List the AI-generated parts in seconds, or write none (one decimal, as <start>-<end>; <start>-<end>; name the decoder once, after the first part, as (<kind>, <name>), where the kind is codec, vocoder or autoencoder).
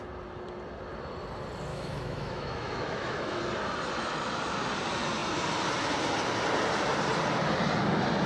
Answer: 1.7-3.4 (autoencoder, DAC-VAE)